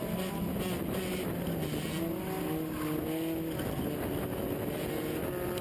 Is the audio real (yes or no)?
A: yes